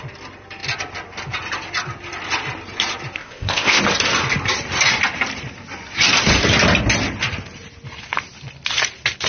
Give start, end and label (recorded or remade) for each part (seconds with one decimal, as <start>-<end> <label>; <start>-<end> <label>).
0.0-3.2 recorded; 3.2-3.8 remade; 3.8-9.3 recorded